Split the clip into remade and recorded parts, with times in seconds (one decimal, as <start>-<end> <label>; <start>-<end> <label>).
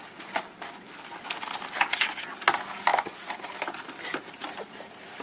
0.0-2.9 recorded; 2.9-3.5 remade; 3.5-5.2 recorded